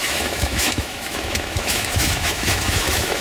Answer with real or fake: fake